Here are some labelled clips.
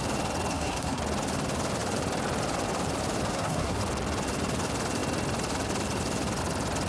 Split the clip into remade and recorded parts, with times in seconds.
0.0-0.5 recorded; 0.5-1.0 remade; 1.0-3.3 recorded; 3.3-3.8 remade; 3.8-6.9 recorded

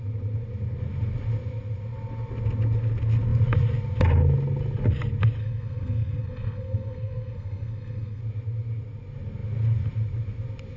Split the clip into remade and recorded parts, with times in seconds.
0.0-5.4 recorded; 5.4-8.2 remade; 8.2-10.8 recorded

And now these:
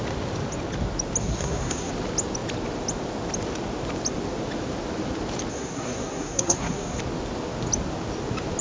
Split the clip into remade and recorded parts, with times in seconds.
0.0-1.2 recorded; 1.2-1.9 remade; 1.9-5.5 recorded; 5.5-7.0 remade; 7.0-8.6 recorded

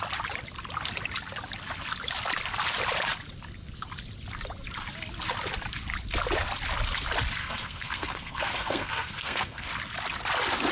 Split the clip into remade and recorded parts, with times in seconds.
0.0-7.4 recorded; 7.4-9.7 remade; 9.7-10.7 recorded

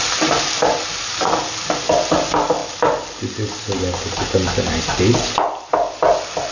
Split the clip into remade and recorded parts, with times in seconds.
0.0-6.5 recorded